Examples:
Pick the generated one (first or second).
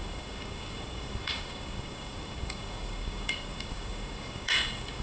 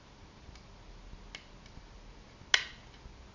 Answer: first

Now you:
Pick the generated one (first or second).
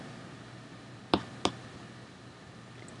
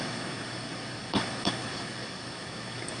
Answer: second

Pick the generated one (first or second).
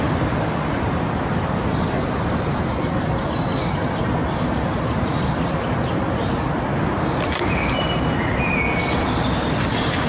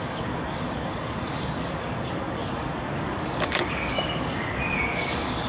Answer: second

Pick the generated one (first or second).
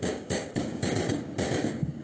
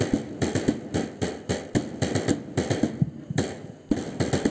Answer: first